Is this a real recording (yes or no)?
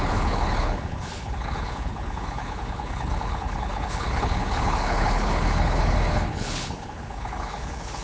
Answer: no